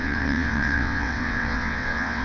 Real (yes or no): no